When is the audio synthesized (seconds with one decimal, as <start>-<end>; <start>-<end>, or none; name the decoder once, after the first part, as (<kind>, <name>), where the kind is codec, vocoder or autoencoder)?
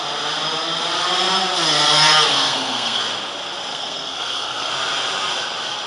2.3-3.0 (codec, SNAC); 3.7-4.7